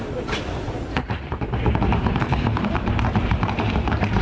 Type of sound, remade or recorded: remade